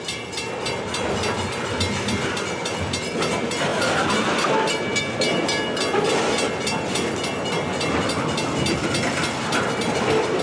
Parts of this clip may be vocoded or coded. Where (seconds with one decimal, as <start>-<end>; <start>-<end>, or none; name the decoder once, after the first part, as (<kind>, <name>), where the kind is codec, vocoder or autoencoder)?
none